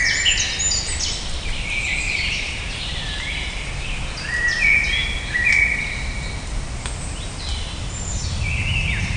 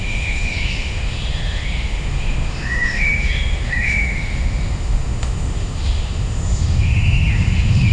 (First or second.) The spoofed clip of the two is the second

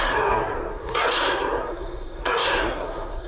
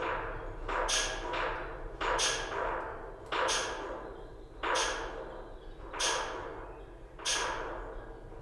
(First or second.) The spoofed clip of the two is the first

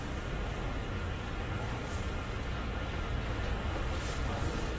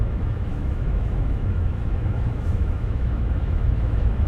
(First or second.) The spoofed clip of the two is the second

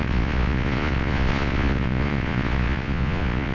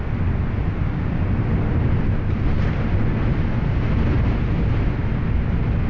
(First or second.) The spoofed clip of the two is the first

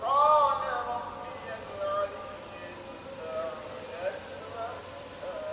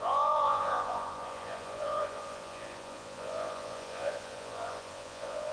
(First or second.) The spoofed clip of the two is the second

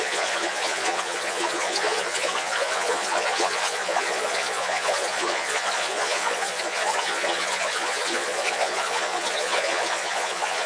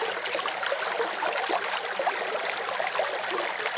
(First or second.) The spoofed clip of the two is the first